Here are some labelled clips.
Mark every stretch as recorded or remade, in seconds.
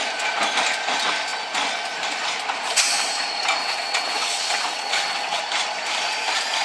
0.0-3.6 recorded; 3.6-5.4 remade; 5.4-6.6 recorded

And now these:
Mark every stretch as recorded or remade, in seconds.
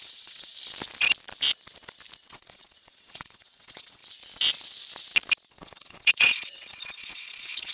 0.0-0.5 remade; 0.5-2.2 recorded; 2.2-4.0 remade; 4.0-5.5 recorded; 5.5-7.7 remade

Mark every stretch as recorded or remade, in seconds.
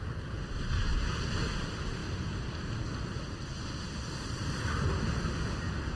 0.0-6.0 recorded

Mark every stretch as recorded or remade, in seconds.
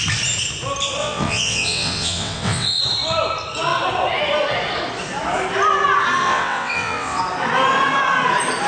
0.0-1.0 recorded; 1.0-2.8 remade; 2.8-6.2 recorded; 6.2-7.2 remade; 7.2-8.7 recorded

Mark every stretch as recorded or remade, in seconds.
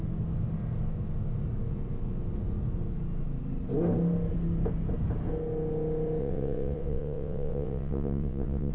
0.0-6.2 recorded; 6.2-8.7 remade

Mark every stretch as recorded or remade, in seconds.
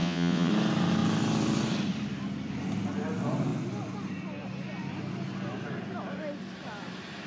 0.0-0.5 remade; 0.5-7.3 recorded